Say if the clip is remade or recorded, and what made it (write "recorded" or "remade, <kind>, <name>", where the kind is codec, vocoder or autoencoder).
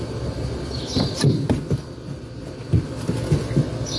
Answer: recorded